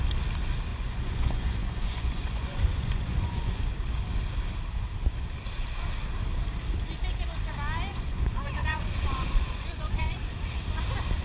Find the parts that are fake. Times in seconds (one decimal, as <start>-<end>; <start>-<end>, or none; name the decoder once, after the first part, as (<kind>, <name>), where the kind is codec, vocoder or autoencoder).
0.7-3.6 (vocoder, Vocos); 7.9-10.2